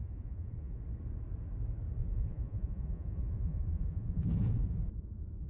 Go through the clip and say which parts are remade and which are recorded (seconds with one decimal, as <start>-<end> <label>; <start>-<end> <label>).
0.0-0.8 remade; 0.8-2.0 recorded; 2.0-5.5 remade